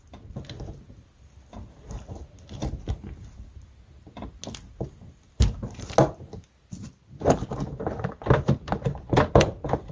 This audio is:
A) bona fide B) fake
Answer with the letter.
A